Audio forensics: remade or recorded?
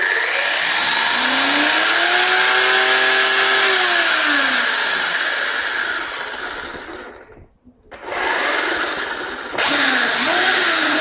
recorded